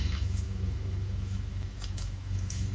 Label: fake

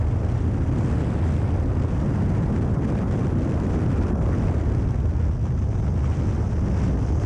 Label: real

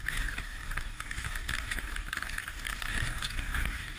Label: fake